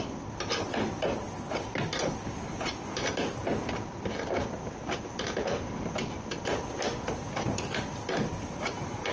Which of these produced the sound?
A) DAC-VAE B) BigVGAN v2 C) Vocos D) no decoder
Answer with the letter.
D